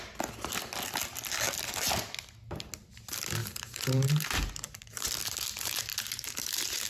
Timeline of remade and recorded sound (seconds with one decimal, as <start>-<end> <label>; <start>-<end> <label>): 0.0-3.4 recorded; 3.4-5.1 remade; 5.1-5.9 recorded; 5.9-6.9 remade